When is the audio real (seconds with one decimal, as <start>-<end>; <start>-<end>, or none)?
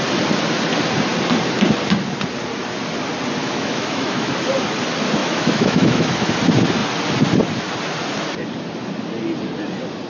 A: 0.0-3.4; 4.3-5.2; 6.3-10.1